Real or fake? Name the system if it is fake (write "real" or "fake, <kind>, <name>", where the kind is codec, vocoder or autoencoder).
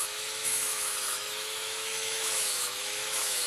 fake, autoencoder, DAC-VAE